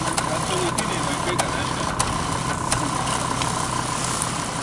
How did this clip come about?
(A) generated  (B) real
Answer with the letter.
B